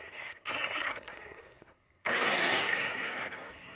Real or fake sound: fake